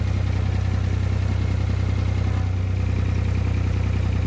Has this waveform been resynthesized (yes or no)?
no